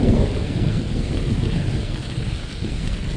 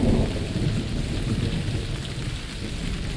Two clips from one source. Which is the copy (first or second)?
first